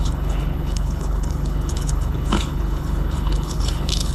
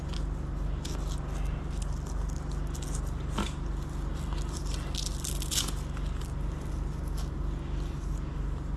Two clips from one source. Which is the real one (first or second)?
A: second